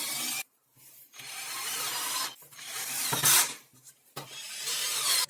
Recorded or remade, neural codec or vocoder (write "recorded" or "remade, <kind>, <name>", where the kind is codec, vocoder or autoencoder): remade, vocoder, BigVGAN v2